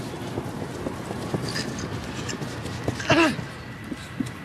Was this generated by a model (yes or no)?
no